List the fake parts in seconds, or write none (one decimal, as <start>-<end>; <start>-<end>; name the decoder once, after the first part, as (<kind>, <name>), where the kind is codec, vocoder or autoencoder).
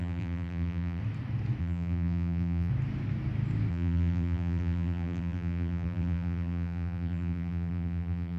0.0-1.0 (vocoder, BigVGAN v2); 1.6-2.7; 3.7-8.4